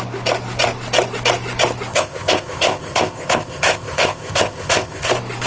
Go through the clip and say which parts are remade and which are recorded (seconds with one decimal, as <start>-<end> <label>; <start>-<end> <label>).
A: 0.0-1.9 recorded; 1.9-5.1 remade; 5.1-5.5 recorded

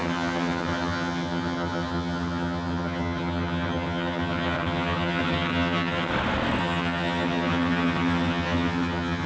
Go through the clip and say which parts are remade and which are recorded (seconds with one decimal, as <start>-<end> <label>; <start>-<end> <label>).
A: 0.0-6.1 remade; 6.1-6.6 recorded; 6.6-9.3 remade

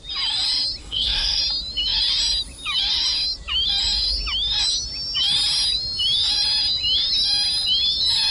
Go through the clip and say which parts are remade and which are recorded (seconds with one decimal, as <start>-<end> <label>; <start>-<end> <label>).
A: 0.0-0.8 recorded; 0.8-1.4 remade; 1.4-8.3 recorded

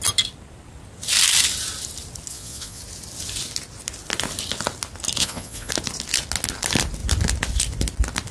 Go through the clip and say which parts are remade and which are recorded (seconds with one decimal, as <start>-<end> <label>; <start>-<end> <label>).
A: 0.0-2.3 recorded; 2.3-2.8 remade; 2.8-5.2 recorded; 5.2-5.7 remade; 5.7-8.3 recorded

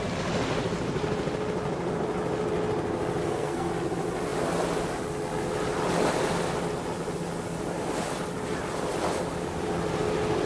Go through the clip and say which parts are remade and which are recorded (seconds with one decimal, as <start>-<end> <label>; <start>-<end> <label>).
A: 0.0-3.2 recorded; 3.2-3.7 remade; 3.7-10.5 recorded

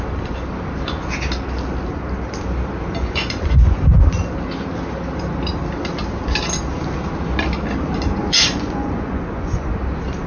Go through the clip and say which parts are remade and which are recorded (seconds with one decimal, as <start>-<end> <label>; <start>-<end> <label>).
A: 0.0-3.0 recorded; 3.0-3.8 remade; 3.8-8.2 recorded; 8.2-9.7 remade; 9.7-10.3 recorded

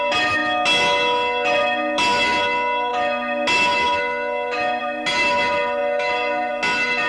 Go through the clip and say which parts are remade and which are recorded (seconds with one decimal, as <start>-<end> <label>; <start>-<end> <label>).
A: 0.0-7.1 recorded

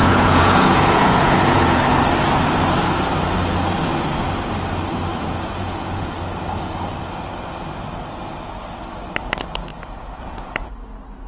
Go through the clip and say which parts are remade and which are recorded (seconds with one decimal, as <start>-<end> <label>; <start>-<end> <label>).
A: 0.0-1.8 remade; 1.8-5.1 recorded; 5.1-6.2 remade; 6.2-11.3 recorded